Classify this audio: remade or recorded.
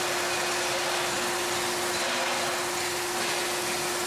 recorded